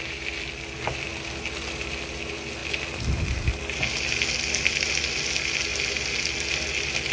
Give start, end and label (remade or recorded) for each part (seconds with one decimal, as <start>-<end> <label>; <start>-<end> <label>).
0.0-7.1 recorded